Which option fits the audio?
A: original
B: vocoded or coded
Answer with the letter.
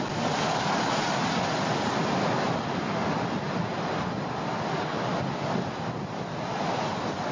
A